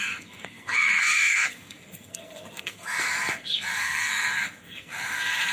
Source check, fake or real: fake